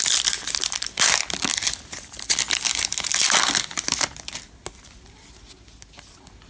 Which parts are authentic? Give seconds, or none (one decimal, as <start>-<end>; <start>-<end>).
0.0-6.5